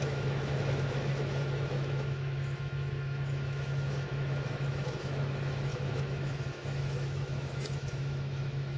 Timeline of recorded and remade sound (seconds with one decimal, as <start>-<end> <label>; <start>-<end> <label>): 0.0-8.8 remade